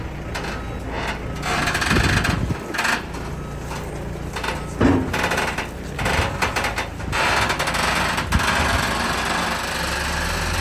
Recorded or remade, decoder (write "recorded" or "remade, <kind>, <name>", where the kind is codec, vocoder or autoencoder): recorded